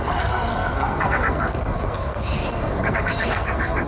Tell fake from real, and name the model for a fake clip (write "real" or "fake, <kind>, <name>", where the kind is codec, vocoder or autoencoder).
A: fake, codec, SNAC